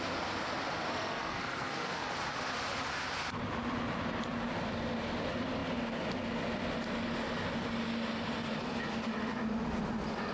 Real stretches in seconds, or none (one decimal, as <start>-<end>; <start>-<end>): 0.0-0.9; 2.1-10.3